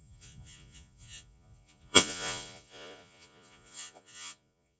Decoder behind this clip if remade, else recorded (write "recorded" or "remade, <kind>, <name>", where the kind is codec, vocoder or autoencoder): remade, vocoder, Vocos